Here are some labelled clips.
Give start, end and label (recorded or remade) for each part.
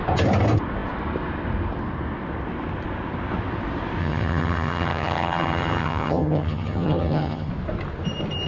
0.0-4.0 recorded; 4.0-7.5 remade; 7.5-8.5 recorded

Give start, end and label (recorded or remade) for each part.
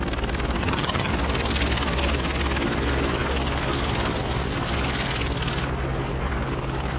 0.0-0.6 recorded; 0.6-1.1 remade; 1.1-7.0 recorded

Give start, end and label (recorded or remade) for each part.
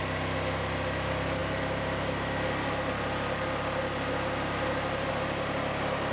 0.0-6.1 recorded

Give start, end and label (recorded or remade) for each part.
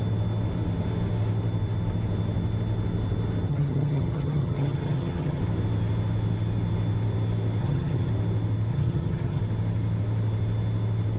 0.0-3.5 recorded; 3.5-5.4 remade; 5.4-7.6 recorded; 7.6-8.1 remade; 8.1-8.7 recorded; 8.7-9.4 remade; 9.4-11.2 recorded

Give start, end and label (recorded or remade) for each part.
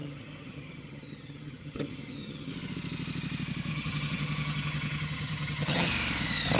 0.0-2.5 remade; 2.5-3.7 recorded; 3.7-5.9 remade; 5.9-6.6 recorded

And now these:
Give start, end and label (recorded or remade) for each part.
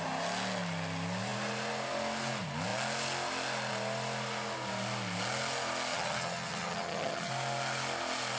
0.0-5.9 recorded; 5.9-7.3 remade; 7.3-8.4 recorded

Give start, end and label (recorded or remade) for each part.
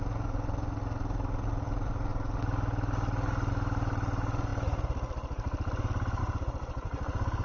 0.0-7.4 recorded